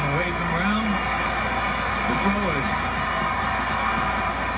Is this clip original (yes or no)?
yes